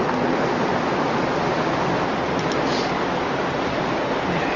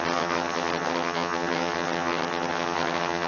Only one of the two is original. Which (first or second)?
first